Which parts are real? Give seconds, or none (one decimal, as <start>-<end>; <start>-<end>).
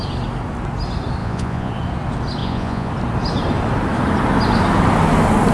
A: 0.0-1.2; 1.7-2.4; 2.9-5.5